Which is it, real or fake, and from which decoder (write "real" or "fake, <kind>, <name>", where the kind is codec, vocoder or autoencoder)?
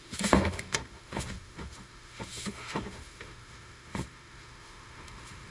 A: fake, autoencoder, DAC-VAE